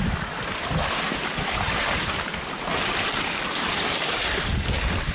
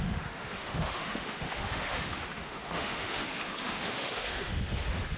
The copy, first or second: second